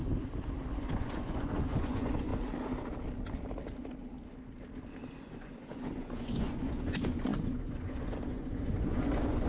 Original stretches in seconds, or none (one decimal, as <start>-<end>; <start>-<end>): 0.0-0.8; 2.3-5.2